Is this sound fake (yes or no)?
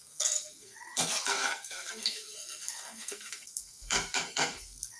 yes